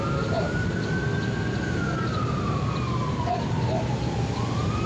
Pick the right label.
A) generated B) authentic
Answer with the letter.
B